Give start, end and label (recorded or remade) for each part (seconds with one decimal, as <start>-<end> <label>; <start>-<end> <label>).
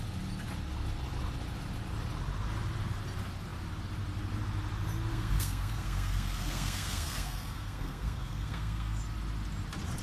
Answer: 0.0-5.1 recorded; 5.1-9.0 remade; 9.0-10.0 recorded